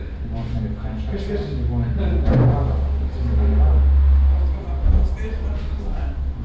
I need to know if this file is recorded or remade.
recorded